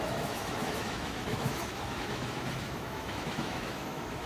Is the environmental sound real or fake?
fake